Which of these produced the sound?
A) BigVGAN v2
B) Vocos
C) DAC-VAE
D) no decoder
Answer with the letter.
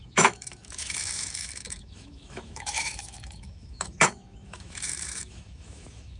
C